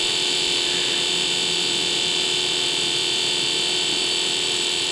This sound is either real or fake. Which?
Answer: fake